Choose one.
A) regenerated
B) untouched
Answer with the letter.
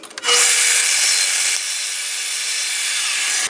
B